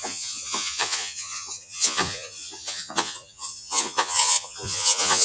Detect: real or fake fake